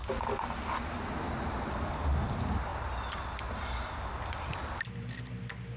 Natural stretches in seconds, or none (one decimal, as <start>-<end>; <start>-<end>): 0.0-5.8